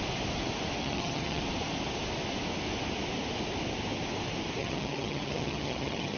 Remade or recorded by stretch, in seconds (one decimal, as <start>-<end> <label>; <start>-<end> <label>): 0.0-0.8 recorded; 0.8-1.4 remade; 1.4-4.6 recorded; 4.6-6.2 remade